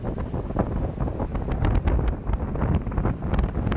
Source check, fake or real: real